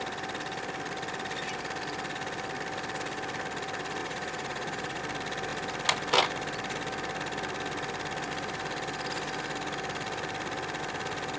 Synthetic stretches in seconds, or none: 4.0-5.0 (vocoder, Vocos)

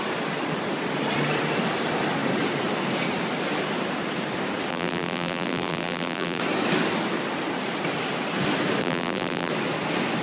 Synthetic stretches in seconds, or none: 4.7-6.4 (vocoder, BigVGAN v2); 8.8-9.5

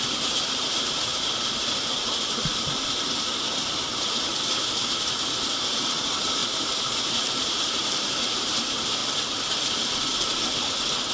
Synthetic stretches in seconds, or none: 0.0-4.3 (vocoder, BigVGAN v2); 5.1-9.0

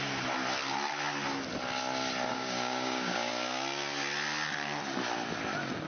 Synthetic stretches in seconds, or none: 2.3-3.3 (codec, DAC)

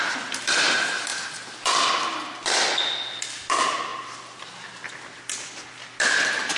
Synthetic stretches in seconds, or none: none

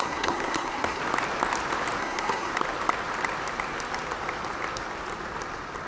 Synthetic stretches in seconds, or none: 0.0-1.0 (codec, SNAC); 2.0-2.5